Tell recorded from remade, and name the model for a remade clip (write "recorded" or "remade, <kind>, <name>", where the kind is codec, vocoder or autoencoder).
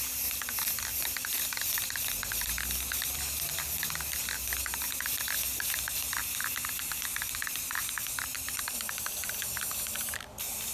recorded